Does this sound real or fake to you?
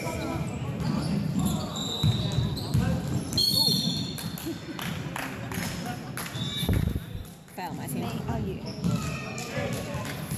real